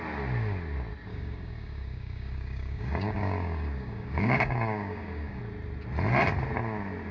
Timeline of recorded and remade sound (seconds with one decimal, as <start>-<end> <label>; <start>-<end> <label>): 0.0-1.1 recorded; 1.1-5.4 remade; 5.4-7.1 recorded